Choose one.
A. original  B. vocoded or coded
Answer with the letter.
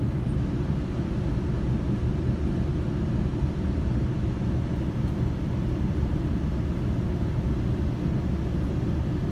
A